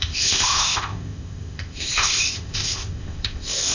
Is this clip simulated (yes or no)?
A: yes